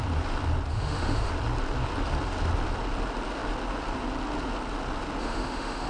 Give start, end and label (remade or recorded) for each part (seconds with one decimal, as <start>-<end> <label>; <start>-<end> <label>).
0.0-0.7 recorded; 0.7-1.3 remade; 1.3-5.2 recorded; 5.2-5.9 remade